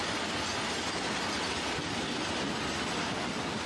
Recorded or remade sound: recorded